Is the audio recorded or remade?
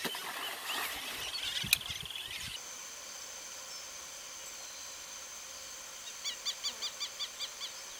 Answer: recorded